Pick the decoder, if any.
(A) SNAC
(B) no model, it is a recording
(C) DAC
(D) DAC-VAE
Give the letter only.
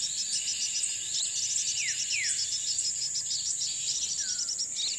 B